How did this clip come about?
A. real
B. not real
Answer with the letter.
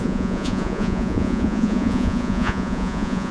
B